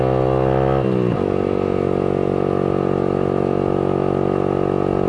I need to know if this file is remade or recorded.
recorded